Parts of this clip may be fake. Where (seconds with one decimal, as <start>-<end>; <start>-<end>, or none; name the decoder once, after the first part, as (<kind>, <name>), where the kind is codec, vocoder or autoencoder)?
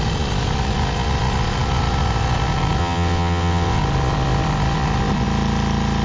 2.8-3.8 (vocoder, WaveNeXt)